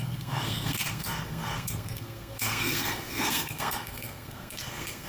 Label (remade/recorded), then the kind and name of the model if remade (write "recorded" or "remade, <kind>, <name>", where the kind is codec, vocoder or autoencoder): remade, codec, SNAC